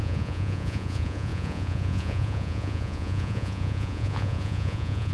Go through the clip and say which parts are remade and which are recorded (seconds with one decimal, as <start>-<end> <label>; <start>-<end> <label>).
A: 0.0-5.1 remade